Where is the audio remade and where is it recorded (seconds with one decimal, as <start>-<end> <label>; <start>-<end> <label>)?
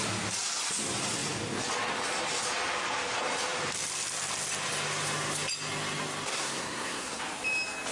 0.0-6.3 recorded; 6.3-7.2 remade; 7.2-7.9 recorded